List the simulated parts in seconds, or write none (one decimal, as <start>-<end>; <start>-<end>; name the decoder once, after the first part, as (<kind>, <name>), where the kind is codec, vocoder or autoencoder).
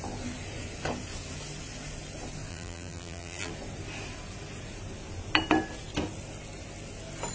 2.5-3.5 (vocoder, BigVGAN v2)